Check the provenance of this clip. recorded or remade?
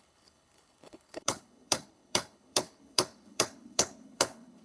remade